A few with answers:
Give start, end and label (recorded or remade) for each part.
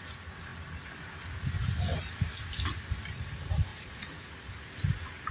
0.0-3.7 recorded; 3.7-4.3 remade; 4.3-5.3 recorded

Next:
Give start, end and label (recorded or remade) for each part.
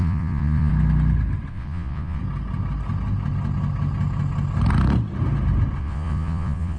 0.0-0.7 remade; 0.7-1.5 recorded; 1.5-2.2 remade; 2.2-5.8 recorded; 5.8-6.8 remade